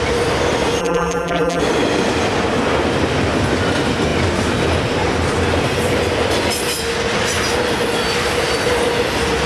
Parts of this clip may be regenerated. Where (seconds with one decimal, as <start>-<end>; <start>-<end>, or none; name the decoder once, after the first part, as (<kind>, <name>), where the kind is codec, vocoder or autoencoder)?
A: 0.8-1.6 (vocoder, BigVGAN v2)